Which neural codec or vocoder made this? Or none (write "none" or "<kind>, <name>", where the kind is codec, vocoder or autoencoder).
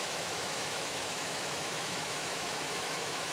autoencoder, DAC-VAE